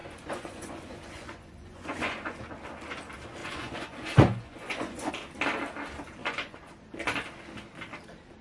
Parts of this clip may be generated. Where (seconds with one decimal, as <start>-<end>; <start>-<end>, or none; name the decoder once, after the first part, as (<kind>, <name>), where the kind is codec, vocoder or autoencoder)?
0.0-2.4 (vocoder, Vocos); 3.4-5.1; 6.2-6.7